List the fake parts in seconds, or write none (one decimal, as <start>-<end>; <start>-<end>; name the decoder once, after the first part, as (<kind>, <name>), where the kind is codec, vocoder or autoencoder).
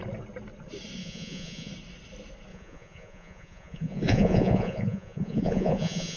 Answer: 1.0-1.7 (vocoder, Vocos); 2.5-6.2